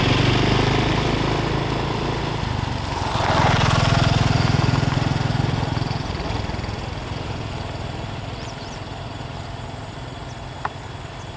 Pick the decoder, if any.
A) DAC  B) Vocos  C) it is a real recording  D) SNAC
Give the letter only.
C